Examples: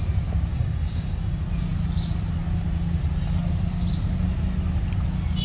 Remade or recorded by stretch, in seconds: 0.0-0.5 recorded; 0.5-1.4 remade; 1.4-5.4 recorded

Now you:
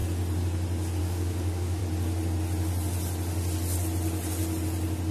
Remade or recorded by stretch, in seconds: 0.0-1.0 recorded; 1.0-1.8 remade; 1.8-5.1 recorded

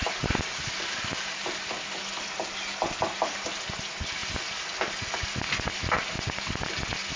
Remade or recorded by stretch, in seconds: 0.0-7.2 recorded

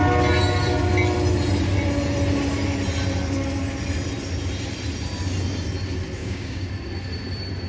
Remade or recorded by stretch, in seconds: 0.0-6.2 recorded; 6.2-6.7 remade; 6.7-7.7 recorded

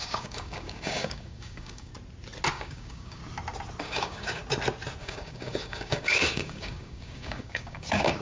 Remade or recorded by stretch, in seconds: 0.0-1.9 remade; 1.9-2.5 recorded; 2.5-3.2 remade; 3.2-3.8 recorded; 3.8-4.4 remade; 4.4-5.0 recorded; 5.0-8.2 remade

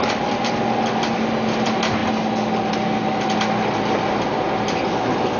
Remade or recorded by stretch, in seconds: 0.0-5.4 recorded

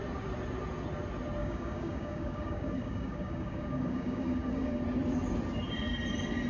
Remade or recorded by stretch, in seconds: 0.0-1.4 recorded; 1.4-4.8 remade; 4.8-6.5 recorded

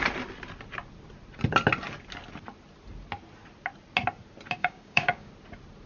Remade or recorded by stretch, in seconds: 0.0-4.6 recorded; 4.6-5.3 remade; 5.3-5.9 recorded